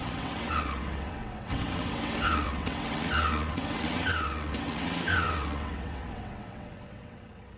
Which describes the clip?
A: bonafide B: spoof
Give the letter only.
B